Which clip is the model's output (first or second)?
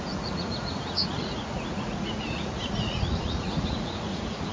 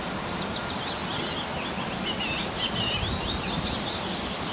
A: first